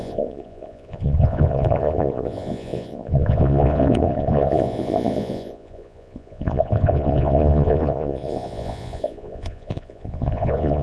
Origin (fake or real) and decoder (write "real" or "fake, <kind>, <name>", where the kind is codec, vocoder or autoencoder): fake, vocoder, Vocos